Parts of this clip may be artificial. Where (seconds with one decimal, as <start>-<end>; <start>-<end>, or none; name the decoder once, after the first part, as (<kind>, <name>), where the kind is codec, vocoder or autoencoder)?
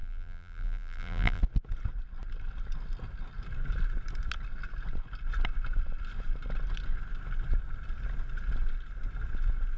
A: 0.0-1.4 (vocoder, BigVGAN v2)